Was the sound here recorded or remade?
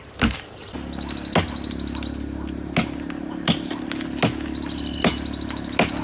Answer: recorded